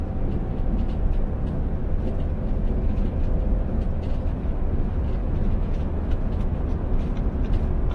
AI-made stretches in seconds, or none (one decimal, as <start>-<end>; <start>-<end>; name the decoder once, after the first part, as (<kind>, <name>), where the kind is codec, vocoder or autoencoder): 5.2-6.7 (autoencoder, DAC-VAE)